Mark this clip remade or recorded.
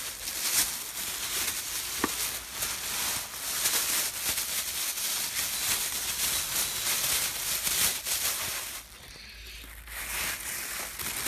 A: recorded